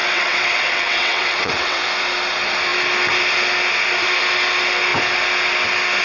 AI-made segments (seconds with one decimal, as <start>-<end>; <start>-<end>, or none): 0.0-1.8